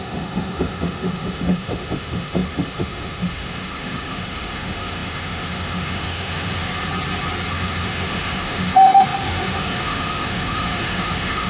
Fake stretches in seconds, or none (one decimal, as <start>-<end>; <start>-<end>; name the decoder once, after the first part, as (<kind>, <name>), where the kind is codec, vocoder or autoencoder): 0.0-6.7 (autoencoder, DAC-VAE); 7.5-11.5